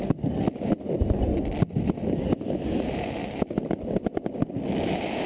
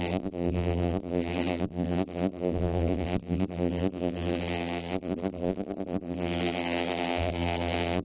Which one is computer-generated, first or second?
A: second